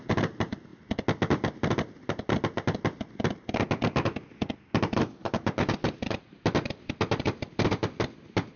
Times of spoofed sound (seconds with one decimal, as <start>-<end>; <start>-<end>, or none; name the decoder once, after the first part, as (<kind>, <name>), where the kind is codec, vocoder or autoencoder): none